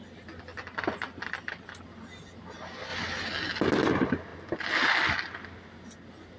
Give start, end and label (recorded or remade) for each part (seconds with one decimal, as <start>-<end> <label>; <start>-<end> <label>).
0.0-6.4 recorded